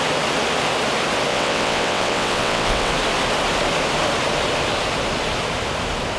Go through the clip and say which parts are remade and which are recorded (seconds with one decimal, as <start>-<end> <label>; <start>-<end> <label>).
0.0-1.3 recorded; 1.3-2.9 remade; 2.9-6.2 recorded